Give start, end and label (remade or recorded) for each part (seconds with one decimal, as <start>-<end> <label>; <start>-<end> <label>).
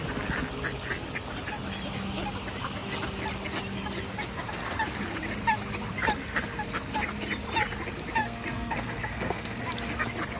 0.0-8.2 recorded; 8.2-9.6 remade; 9.6-10.4 recorded